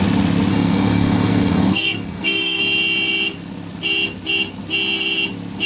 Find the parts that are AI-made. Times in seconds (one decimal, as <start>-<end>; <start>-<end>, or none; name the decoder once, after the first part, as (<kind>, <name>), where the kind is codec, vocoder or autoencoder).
0.5-2.6 (codec, SNAC)